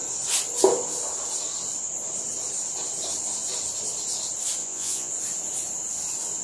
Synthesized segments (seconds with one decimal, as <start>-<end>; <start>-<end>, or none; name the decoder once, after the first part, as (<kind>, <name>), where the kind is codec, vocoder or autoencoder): 4.6-5.1 (vocoder, Vocos)